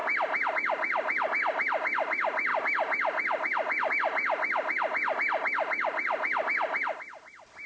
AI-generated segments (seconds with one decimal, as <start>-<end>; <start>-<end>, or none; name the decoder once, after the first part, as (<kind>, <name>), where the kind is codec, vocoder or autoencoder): none